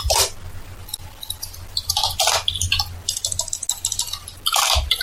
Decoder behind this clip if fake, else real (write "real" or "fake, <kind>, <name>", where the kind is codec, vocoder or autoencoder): real